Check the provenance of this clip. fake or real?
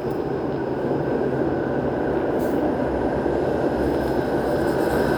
real